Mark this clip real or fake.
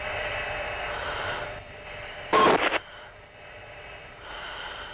fake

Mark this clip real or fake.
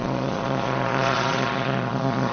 fake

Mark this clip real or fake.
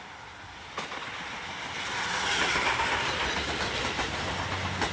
real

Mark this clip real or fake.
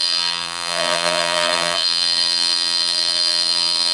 fake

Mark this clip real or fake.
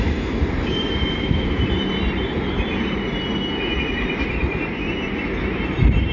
fake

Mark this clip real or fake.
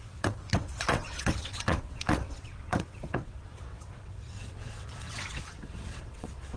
fake